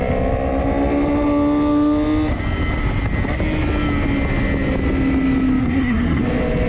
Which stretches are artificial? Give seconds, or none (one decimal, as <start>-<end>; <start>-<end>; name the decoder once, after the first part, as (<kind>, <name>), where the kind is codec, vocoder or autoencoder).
5.6-6.2 (codec, SNAC)